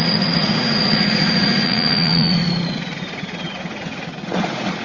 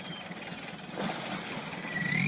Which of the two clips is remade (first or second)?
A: first